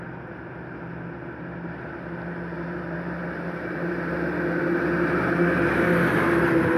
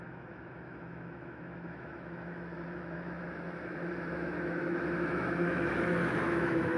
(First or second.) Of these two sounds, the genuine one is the first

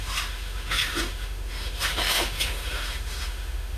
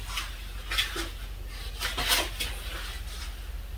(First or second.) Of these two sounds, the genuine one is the second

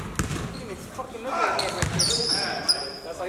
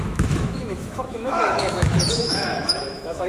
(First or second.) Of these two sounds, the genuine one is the first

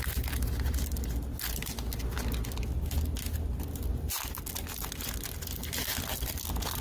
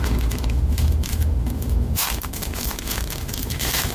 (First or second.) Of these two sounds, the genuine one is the first